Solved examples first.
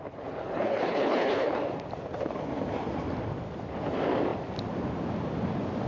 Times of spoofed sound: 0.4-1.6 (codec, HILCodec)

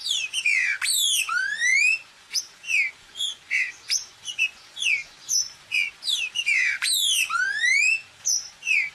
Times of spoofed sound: 0.0-8.9 (vocoder, Vocos)

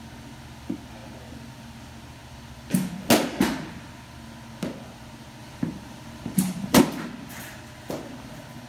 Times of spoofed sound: 5.4-6.8 (vocoder, BigVGAN v2)